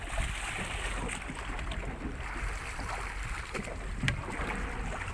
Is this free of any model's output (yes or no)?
yes